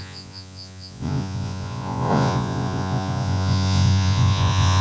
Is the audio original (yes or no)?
no